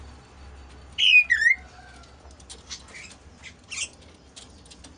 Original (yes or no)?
yes